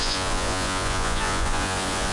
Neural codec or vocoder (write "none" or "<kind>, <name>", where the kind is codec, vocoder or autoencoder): vocoder, Vocos